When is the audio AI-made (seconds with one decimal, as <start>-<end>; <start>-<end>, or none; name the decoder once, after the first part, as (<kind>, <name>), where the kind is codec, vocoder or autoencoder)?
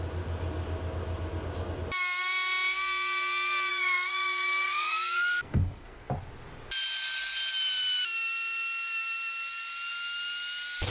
3.7-6.1 (codec, SNAC)